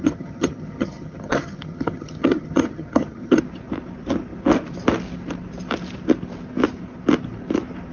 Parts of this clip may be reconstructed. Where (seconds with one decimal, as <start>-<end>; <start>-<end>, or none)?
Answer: 0.0-3.4